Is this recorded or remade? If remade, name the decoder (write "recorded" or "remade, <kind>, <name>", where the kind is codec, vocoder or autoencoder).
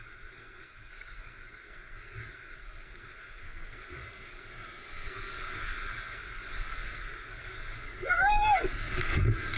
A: remade, codec, SNAC